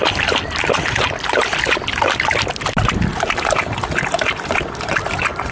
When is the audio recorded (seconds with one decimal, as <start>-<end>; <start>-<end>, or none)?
0.0-5.5